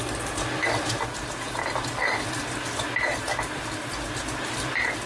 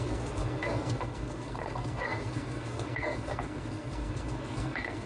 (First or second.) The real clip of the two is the first